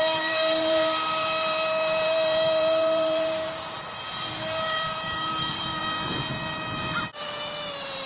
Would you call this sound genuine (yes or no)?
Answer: no